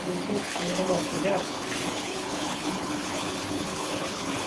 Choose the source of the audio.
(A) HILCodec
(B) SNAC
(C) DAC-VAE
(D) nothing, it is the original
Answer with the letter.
A